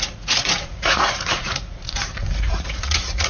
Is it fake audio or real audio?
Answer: fake